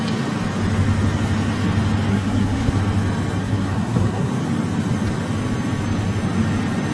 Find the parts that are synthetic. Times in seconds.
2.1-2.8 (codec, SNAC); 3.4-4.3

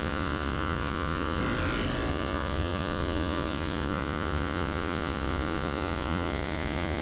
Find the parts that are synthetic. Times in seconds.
0.0-1.4 (vocoder, Vocos); 2.1-7.0

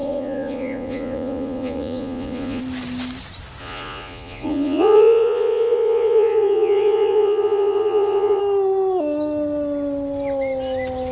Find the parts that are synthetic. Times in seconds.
0.0-2.6 (vocoder, Vocos); 3.6-8.4

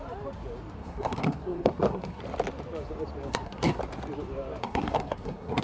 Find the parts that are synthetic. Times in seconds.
0.8-2.2 (codec, SNAC); 3.3-3.8; 4.6-5.6

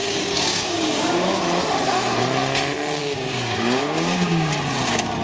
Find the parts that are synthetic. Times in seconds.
0.0-1.4 (codec, DAC); 3.0-4.5